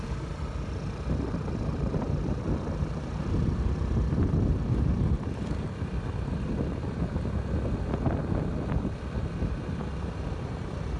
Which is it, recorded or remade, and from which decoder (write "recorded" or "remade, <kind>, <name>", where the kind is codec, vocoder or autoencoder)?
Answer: recorded